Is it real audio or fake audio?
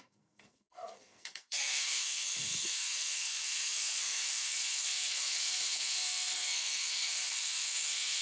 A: fake